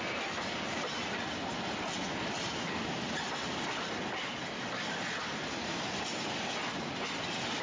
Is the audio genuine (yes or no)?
yes